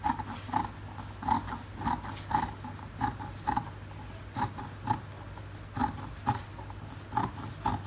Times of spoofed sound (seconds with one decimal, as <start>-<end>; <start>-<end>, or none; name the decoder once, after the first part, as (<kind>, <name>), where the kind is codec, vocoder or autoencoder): none